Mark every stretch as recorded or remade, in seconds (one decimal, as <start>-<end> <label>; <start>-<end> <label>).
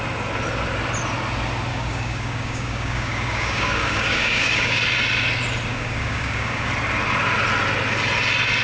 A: 0.0-1.7 recorded; 1.7-4.8 remade; 4.8-5.7 recorded; 5.7-6.7 remade; 6.7-8.6 recorded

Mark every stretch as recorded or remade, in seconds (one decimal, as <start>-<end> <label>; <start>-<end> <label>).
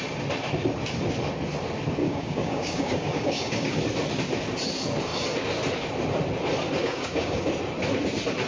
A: 0.0-2.0 recorded; 2.0-3.8 remade; 3.8-6.8 recorded; 6.8-7.5 remade; 7.5-8.5 recorded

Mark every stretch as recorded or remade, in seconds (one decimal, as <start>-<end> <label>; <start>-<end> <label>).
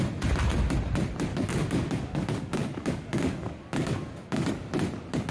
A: 0.0-1.3 recorded; 1.3-4.5 remade; 4.5-5.3 recorded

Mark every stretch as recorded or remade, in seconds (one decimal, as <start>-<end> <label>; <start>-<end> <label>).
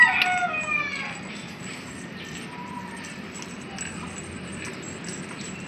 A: 0.0-5.7 recorded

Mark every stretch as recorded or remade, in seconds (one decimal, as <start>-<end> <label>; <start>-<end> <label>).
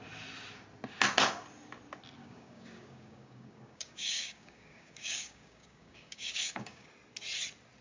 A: 0.0-2.2 recorded; 2.2-6.9 remade; 6.9-7.8 recorded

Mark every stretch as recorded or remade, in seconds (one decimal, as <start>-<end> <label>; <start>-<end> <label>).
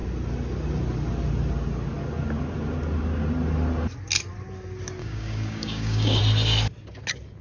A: 0.0-5.0 recorded; 5.0-6.2 remade; 6.2-7.4 recorded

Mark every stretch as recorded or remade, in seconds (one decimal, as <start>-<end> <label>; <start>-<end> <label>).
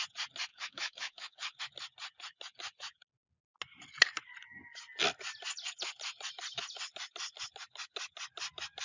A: 0.0-0.5 recorded; 0.5-1.6 remade; 1.6-8.8 recorded